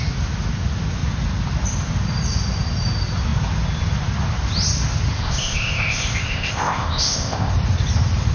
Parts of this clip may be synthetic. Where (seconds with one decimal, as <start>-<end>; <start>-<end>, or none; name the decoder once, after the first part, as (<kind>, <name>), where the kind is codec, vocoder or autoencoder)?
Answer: 5.2-7.5 (codec, ZipCodec)